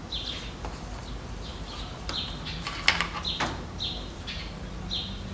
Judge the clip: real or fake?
real